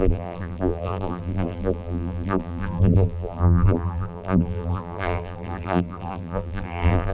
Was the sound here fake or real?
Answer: fake